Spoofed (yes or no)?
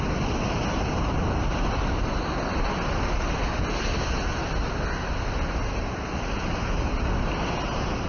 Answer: no